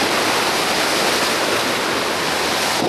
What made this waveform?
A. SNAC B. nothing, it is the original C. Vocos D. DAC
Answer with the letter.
B